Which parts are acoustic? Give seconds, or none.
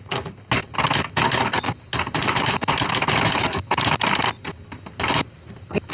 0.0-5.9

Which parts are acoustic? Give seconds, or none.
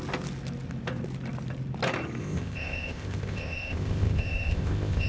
0.0-2.2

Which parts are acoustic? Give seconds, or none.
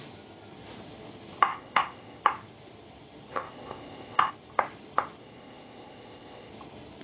0.0-1.5; 2.2-3.3; 4.3-5.2; 6.5-7.0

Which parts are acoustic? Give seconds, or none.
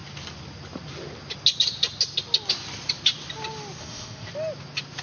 0.0-3.8; 4.3-5.0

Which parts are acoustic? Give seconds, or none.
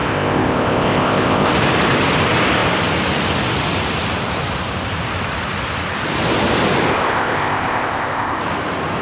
1.5-6.9; 8.4-9.0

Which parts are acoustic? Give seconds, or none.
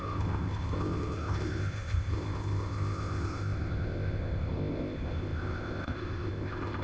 none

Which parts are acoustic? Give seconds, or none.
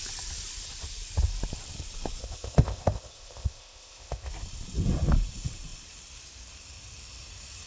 0.0-2.2; 4.3-7.7